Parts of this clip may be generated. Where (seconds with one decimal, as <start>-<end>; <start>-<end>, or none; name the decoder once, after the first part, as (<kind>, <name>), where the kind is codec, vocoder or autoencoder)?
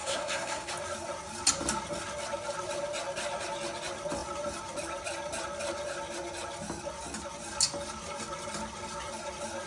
0.0-0.7 (codec, SNAC)